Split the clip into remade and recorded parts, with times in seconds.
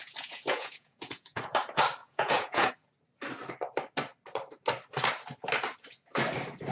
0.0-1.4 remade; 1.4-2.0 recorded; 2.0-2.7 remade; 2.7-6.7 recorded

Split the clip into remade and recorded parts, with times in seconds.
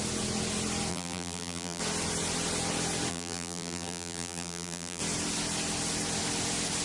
0.0-0.9 recorded; 0.9-1.8 remade; 1.8-3.1 recorded; 3.1-5.0 remade; 5.0-6.8 recorded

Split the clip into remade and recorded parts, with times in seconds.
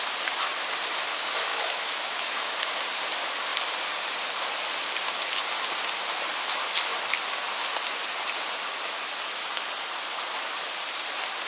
0.0-1.5 recorded; 1.5-2.6 remade; 2.6-11.5 recorded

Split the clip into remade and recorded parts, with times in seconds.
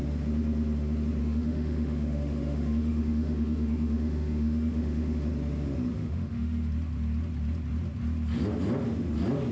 0.0-1.2 recorded; 1.2-5.3 remade; 5.3-5.9 recorded; 5.9-6.7 remade; 6.7-9.5 recorded